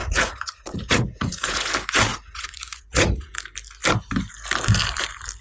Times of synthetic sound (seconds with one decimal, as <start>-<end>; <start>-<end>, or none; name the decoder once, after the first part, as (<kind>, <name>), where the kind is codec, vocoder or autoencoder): 0.0-1.7 (vocoder, Vocos); 2.1-3.4